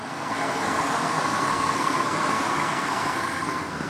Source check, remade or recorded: remade